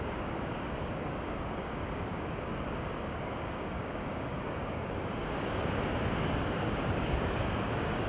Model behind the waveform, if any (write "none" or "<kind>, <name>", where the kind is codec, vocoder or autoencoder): codec, DAC